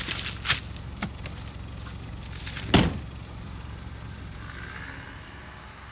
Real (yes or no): yes